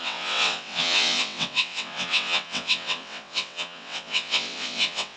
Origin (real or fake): fake